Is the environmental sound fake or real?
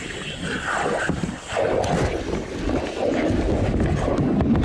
real